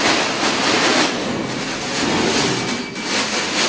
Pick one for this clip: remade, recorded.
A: recorded